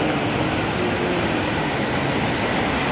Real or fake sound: real